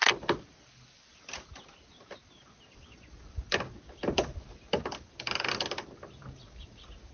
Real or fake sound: real